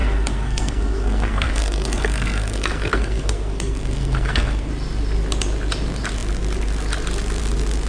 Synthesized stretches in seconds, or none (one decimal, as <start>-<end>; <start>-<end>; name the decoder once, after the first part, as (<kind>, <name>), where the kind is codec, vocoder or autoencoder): 0.0-4.7 (codec, SNAC)

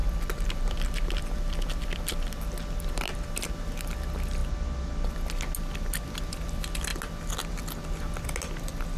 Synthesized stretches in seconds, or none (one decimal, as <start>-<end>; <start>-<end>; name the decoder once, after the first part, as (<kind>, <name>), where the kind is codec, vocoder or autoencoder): 0.0-2.5 (vocoder, BigVGAN v2)

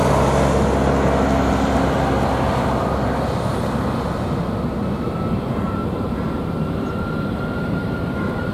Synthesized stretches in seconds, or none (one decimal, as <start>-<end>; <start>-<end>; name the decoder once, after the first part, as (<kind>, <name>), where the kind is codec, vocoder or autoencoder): 5.0-8.5 (vocoder, BigVGAN v2)

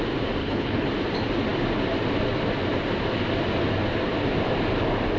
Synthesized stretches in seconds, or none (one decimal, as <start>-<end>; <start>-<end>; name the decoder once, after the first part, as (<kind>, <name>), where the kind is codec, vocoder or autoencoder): 0.4-0.9 (codec, HILCodec)

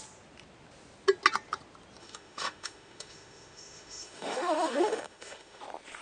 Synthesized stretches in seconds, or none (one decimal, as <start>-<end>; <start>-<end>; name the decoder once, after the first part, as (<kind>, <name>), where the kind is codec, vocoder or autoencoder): 2.0-5.6 (autoencoder, DAC-VAE)

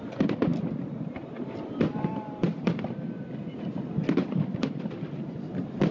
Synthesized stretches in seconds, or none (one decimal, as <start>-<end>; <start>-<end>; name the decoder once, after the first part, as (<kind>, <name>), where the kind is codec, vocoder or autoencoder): 0.0-5.9 (vocoder, BigVGAN v2)

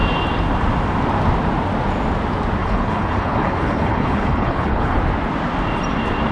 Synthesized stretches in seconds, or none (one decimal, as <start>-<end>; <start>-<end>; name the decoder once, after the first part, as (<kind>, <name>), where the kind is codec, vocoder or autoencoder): 2.6-5.0 (codec, HILCodec)